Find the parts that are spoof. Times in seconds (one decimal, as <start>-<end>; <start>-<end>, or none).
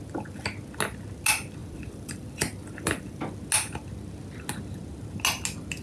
1.6-3.2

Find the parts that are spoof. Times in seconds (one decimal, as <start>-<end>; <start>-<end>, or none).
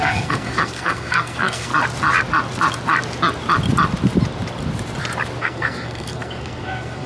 0.0-1.7; 5.4-7.1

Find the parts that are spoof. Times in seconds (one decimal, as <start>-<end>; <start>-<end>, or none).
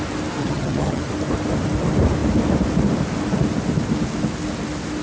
0.4-1.0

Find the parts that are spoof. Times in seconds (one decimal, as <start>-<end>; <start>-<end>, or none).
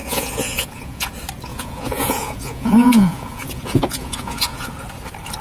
0.0-1.1; 1.5-4.7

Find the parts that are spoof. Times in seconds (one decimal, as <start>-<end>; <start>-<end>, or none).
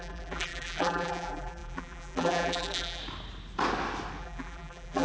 0.0-3.0; 4.2-5.0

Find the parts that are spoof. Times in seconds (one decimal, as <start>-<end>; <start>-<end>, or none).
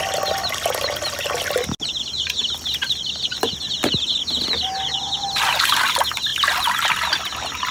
none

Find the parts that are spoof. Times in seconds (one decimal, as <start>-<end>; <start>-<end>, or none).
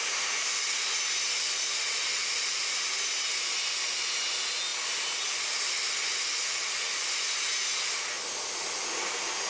none